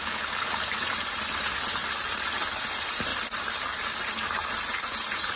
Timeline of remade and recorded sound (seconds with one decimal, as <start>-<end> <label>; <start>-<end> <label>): 0.0-1.8 remade; 1.8-2.6 recorded; 2.6-3.1 remade; 3.1-4.0 recorded; 4.0-5.4 remade